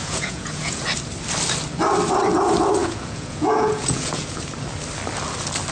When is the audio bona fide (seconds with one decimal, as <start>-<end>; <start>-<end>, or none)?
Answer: 0.8-2.8; 4.4-5.7